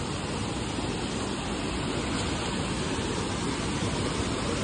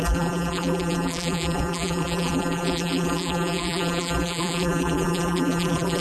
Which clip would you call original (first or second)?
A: first